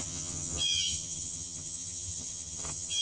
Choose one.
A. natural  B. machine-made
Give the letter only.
B